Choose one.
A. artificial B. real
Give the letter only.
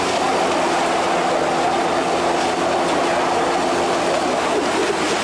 B